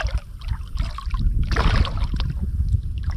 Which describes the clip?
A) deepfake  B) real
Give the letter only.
B